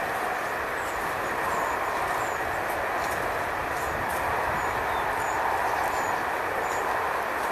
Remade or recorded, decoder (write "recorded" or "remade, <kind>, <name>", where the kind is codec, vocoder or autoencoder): recorded